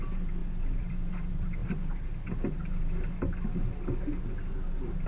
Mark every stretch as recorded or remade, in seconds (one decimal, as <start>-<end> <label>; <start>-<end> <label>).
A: 0.0-0.4 recorded; 0.4-1.1 remade; 1.1-5.1 recorded